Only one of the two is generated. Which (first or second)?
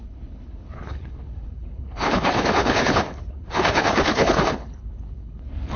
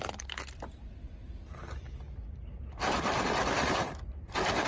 first